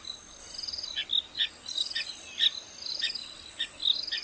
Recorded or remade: recorded